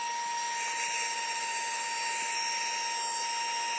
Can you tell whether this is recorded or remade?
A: recorded